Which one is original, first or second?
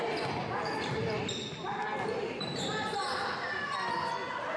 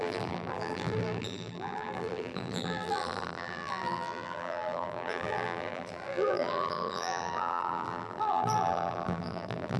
first